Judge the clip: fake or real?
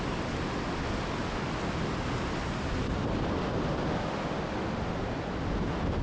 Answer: real